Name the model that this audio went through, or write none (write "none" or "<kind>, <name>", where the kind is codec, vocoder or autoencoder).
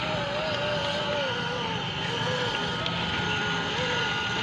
none